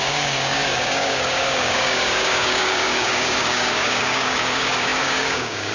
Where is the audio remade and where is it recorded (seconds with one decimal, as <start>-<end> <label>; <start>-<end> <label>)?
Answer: 0.0-5.7 remade